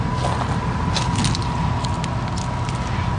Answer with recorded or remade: recorded